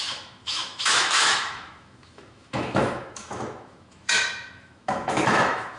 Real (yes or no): no